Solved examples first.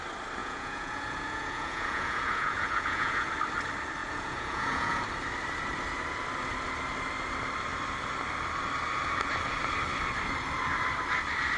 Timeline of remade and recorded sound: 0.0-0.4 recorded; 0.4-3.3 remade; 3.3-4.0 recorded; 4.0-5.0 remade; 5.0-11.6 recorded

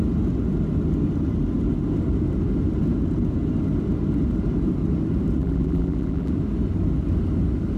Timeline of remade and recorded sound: 0.0-5.4 recorded; 5.4-6.3 remade; 6.3-7.8 recorded

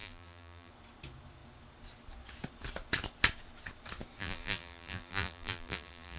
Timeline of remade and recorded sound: 0.0-0.7 remade; 0.7-4.2 recorded; 4.2-6.2 remade